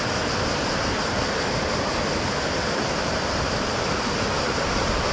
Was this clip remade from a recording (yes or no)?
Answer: no